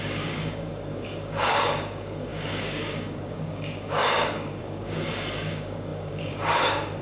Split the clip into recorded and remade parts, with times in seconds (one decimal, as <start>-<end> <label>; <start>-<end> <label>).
0.0-7.0 remade

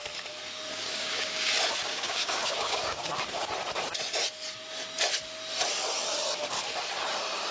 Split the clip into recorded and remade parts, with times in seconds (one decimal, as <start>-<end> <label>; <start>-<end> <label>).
0.0-0.7 recorded; 0.7-1.5 remade; 1.5-1.9 recorded; 1.9-3.1 remade; 3.1-7.5 recorded

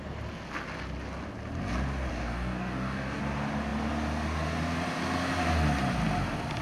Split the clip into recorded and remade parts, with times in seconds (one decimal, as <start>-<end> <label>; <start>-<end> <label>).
0.0-2.1 recorded; 2.1-3.2 remade; 3.2-6.6 recorded

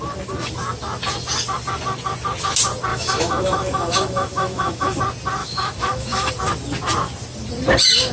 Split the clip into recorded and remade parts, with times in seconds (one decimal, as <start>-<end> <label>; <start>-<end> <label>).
0.0-2.9 recorded; 2.9-5.0 remade; 5.0-5.4 recorded; 5.4-6.3 remade; 6.3-8.1 recorded

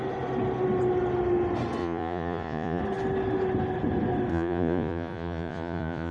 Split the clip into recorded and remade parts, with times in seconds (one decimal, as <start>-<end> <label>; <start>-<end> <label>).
0.0-1.8 recorded; 1.8-2.8 remade; 2.8-4.3 recorded; 4.3-6.1 remade